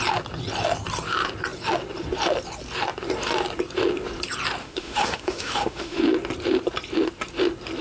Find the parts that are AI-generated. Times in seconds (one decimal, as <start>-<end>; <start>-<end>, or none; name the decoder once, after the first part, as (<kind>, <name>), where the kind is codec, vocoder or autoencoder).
4.6-6.0 (autoencoder, DAC-VAE)